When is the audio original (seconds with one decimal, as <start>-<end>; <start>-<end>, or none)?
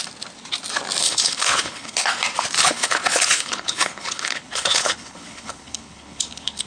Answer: 0.0-1.0; 2.1-2.6